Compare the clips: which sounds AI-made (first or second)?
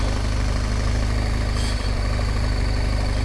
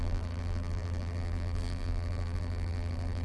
second